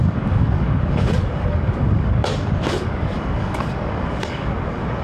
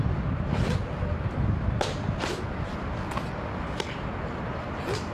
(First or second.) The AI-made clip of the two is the first